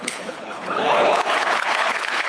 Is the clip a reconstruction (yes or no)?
yes